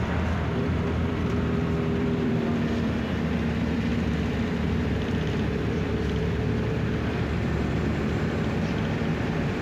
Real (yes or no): no